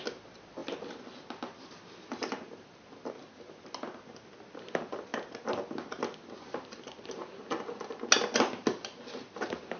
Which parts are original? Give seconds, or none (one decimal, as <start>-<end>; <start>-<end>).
0.0-9.8